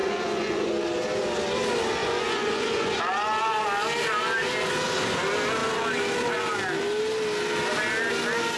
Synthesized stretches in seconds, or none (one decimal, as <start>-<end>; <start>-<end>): 0.0-0.7; 2.0-3.0